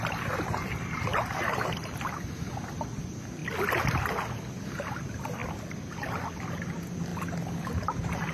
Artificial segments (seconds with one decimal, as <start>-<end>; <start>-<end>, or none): 5.4-5.9